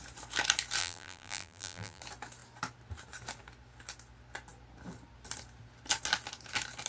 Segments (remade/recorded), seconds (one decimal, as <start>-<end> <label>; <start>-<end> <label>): 0.0-0.8 recorded; 0.8-2.0 remade; 2.0-6.9 recorded